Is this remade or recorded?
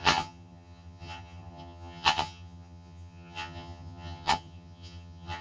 remade